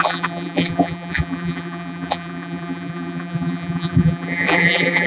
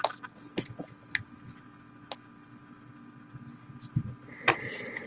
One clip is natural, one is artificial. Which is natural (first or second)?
second